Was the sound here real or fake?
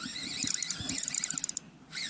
real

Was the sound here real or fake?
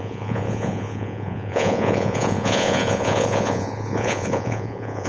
fake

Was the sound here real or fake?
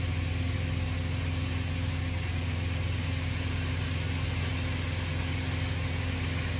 real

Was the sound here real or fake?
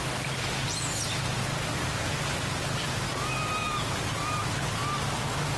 real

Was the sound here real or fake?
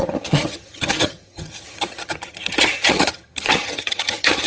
fake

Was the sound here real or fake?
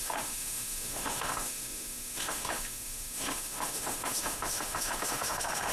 fake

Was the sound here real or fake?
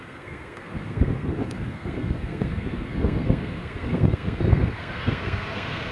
fake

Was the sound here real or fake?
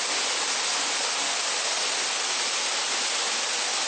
real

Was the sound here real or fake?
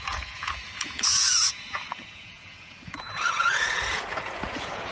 fake